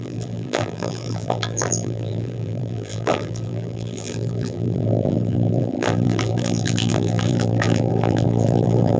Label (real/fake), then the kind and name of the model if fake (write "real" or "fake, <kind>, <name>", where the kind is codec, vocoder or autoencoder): fake, vocoder, BigVGAN v2